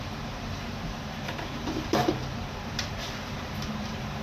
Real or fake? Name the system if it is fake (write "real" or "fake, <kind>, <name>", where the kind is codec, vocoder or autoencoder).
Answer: fake, vocoder, BigVGAN v2